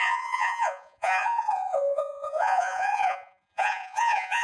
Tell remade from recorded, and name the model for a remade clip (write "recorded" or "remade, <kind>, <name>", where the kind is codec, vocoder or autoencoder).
remade, vocoder, Vocos